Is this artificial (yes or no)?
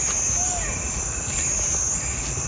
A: no